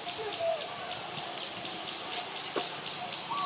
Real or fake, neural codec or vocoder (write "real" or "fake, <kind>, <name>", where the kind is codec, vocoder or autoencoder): real